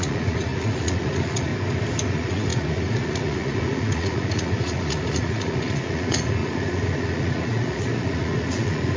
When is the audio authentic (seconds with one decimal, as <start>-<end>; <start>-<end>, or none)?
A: 1.5-2.1